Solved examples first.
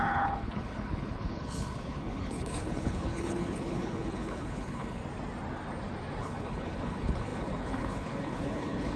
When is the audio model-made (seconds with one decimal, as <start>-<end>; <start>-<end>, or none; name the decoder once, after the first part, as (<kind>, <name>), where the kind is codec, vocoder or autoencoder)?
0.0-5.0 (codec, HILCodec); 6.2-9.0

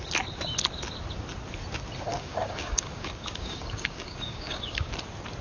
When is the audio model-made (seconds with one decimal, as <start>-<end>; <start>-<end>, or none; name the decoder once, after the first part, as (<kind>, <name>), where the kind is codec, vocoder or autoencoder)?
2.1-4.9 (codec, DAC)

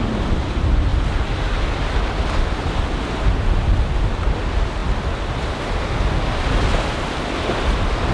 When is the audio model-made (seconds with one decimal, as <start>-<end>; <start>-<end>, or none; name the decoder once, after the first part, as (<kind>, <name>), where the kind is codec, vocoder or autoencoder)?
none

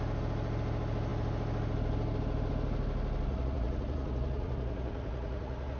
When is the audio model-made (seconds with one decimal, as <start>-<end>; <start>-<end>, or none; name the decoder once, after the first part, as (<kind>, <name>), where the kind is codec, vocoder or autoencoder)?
3.3-5.8 (vocoder, Vocos)

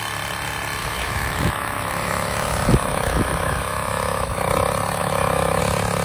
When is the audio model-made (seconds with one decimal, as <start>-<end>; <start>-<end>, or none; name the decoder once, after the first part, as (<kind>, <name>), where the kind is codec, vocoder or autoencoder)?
0.8-4.4 (autoencoder, DAC-VAE); 5.0-5.6

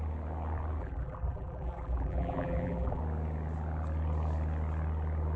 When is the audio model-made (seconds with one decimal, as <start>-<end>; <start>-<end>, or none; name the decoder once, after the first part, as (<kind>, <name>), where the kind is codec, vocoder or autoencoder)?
0.8-3.0 (vocoder, BigVGAN v2)

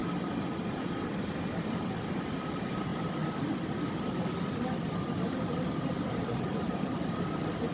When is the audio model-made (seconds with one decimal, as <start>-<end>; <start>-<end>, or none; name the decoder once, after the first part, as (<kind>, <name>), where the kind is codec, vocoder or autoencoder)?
0.9-7.7 (vocoder, BigVGAN v2)